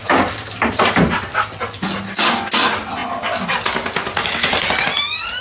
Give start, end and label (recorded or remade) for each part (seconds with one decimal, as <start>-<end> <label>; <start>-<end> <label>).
0.0-5.4 recorded